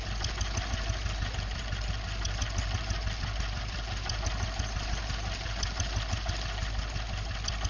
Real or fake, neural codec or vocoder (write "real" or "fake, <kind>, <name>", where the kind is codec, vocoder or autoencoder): real